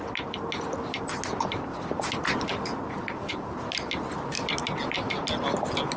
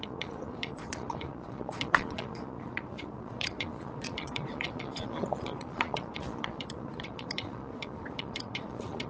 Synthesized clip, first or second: second